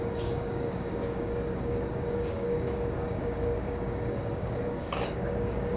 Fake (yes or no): yes